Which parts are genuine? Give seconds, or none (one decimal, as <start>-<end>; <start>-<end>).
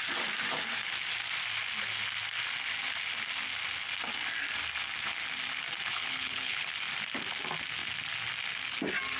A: 0.0-5.9; 6.7-9.2